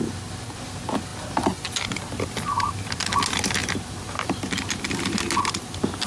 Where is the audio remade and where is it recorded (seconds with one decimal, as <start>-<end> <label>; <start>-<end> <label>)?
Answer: 0.0-6.1 recorded